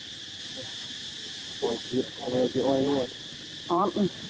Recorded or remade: remade